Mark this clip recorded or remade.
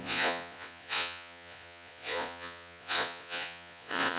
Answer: remade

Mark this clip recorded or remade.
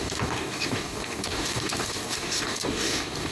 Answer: remade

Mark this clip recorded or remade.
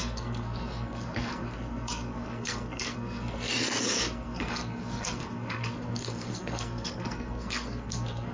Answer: remade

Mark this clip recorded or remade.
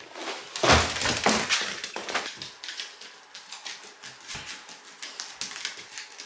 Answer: recorded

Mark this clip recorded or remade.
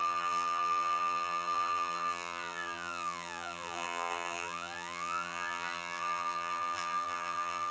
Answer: remade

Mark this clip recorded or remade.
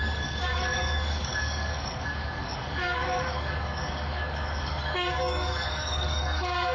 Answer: remade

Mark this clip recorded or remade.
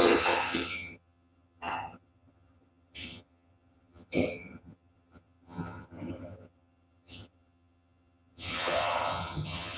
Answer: remade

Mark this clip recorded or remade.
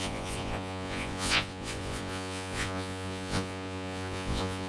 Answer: remade